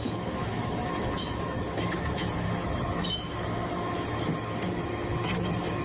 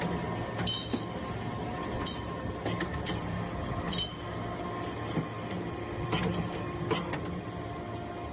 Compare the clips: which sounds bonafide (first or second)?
second